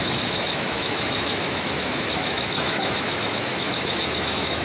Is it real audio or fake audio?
fake